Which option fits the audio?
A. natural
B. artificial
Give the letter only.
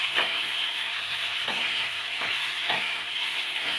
B